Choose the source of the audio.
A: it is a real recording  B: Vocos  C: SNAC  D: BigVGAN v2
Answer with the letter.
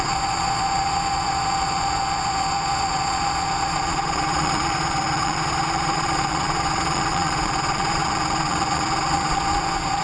B